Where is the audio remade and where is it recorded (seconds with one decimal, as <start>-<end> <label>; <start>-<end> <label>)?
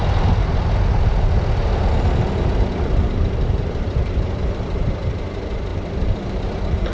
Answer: 0.0-3.2 recorded; 3.2-6.9 remade